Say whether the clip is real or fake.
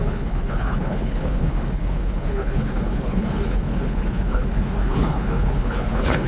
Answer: fake